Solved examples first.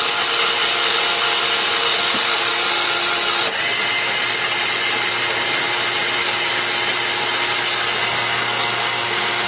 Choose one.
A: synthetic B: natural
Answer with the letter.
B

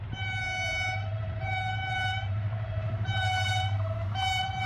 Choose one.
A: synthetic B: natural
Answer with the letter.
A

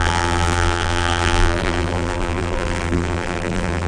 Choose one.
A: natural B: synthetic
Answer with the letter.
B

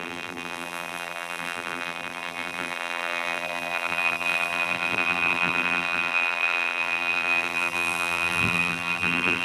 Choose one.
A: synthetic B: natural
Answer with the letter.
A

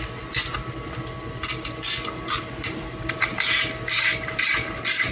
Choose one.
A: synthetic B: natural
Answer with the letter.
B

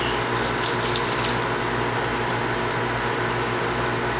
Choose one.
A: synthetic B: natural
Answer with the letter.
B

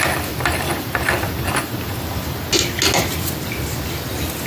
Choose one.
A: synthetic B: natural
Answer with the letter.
B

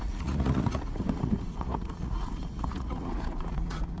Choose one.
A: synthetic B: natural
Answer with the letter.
A